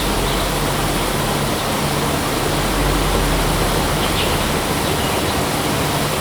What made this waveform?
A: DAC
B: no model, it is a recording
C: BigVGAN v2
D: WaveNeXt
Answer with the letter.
B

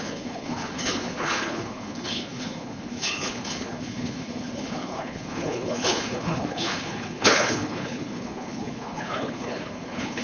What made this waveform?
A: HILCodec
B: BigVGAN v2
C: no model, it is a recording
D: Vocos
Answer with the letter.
A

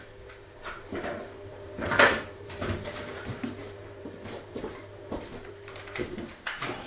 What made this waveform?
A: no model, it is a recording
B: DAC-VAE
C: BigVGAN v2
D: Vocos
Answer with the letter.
C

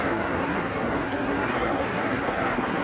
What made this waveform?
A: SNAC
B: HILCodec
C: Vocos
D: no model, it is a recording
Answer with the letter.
A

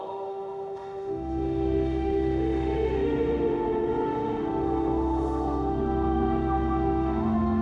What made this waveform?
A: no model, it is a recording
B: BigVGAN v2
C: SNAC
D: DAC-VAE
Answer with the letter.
D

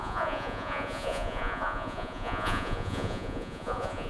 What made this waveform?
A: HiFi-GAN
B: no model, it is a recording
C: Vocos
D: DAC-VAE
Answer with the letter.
C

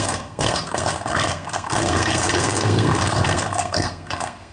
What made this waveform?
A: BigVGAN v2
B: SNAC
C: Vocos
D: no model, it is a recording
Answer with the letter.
B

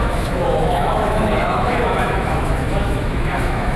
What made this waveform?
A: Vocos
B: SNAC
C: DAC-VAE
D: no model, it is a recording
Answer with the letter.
C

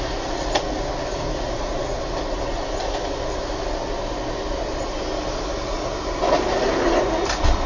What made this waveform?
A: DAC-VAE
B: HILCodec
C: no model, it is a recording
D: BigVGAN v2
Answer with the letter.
C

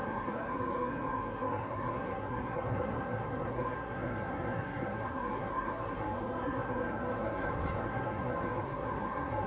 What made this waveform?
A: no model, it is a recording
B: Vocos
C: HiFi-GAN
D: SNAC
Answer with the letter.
D